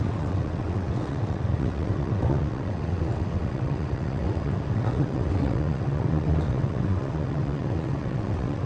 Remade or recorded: remade